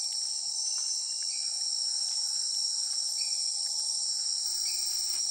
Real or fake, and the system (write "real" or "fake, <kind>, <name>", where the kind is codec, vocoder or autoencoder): fake, vocoder, BigVGAN v2